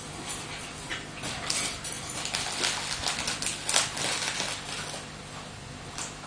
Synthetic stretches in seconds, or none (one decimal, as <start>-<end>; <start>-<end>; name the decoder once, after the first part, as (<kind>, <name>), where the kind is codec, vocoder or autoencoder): none